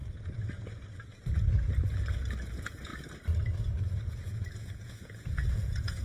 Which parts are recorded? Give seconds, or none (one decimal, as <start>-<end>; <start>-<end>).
0.0-2.5; 2.9-3.9